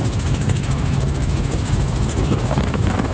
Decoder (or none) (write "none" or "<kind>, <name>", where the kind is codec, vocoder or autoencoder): codec, DAC